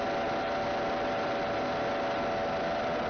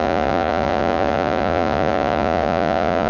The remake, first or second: second